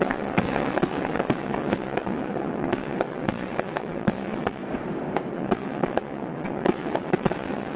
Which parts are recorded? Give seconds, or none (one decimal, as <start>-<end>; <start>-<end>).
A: 4.6-5.3